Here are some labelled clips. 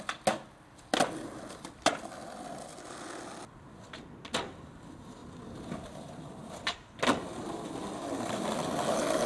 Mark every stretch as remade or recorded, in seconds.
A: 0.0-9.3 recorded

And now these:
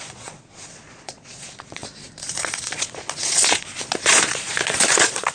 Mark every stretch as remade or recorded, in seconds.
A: 0.0-5.3 remade

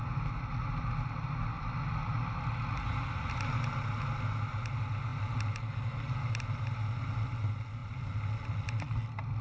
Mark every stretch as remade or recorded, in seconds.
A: 0.0-9.4 recorded

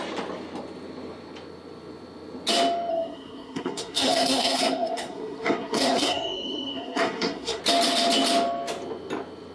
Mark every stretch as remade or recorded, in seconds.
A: 0.0-2.9 recorded; 2.9-7.6 remade; 7.6-9.5 recorded

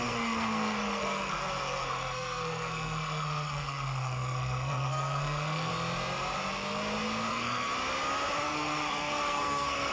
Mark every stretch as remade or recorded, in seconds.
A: 0.0-5.7 remade; 5.7-7.3 recorded; 7.3-7.7 remade; 7.7-8.4 recorded; 8.4-9.9 remade

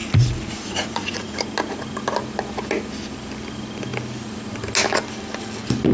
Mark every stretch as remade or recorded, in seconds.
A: 0.0-1.4 remade; 1.4-5.9 recorded

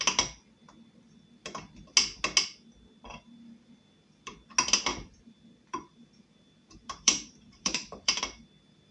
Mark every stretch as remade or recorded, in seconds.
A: 0.0-4.9 recorded; 4.9-8.2 remade; 8.2-8.9 recorded

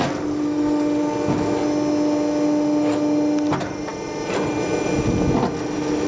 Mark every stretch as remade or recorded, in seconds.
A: 0.0-6.1 recorded